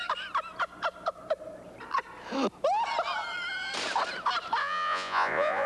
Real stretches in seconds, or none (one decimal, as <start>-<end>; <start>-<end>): 0.0-4.6